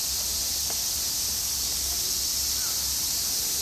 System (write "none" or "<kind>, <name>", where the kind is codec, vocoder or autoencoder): none